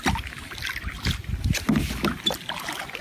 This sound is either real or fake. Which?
real